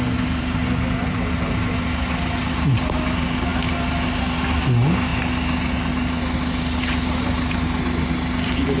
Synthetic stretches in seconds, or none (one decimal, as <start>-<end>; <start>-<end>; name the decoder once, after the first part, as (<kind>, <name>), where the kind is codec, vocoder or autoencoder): none